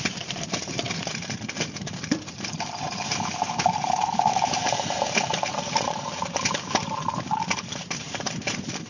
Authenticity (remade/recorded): remade